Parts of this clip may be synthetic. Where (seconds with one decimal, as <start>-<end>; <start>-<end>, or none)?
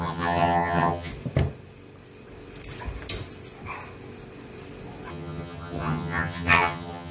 0.0-1.1; 5.1-7.1